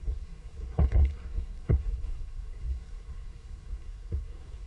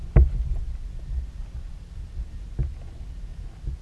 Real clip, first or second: second